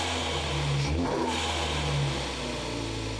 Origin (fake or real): real